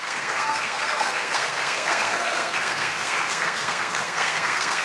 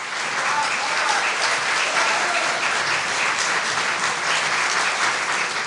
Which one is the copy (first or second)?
first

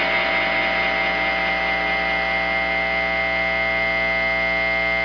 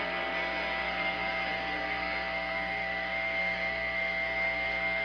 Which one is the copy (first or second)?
second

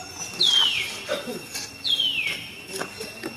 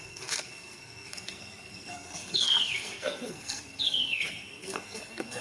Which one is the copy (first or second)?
second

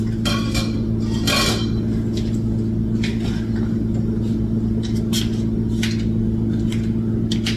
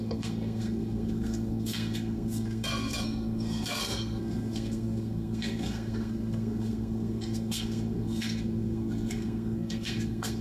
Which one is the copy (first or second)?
second